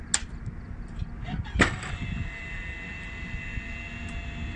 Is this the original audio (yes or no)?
yes